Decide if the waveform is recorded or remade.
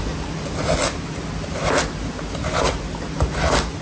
recorded